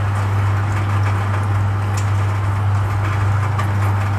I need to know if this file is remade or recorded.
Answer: recorded